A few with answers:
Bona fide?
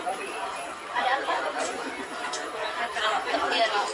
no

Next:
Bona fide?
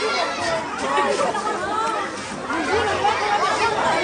yes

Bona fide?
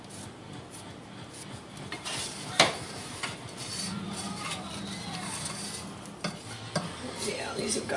yes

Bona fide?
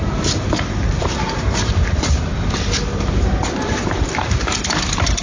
no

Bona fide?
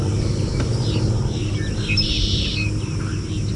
no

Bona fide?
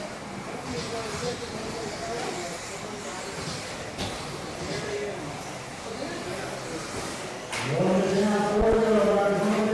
yes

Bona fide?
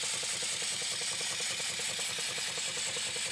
no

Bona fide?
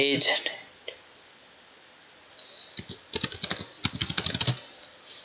yes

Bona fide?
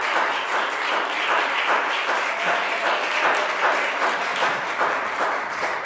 no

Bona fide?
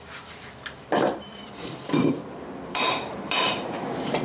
no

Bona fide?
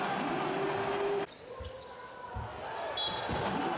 yes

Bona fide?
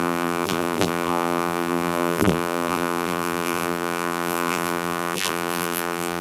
no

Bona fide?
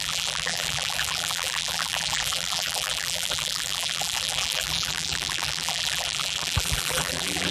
no